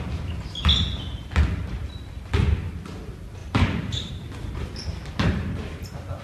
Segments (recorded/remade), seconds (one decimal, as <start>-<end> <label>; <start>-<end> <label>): 0.0-3.4 recorded; 3.4-4.1 remade; 4.1-6.2 recorded